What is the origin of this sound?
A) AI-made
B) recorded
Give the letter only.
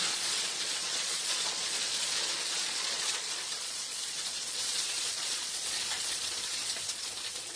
A